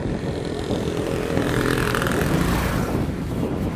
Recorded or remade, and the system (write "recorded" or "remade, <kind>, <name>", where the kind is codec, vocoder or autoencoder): recorded